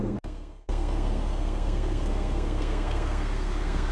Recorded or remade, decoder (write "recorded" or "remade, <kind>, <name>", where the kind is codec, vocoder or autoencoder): remade, codec, SNAC